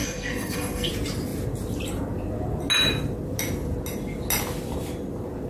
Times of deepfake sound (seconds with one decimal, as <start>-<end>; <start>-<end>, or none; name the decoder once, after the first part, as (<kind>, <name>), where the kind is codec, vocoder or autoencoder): 0.0-0.9 (codec, SNAC)